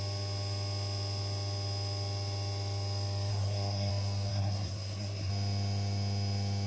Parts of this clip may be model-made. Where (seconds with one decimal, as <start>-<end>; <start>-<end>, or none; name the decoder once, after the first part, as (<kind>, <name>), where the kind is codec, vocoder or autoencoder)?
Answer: 3.3-3.9 (codec, SNAC); 4.3-5.3